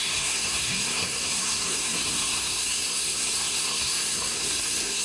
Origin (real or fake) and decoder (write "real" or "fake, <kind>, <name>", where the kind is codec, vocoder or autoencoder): fake, codec, SNAC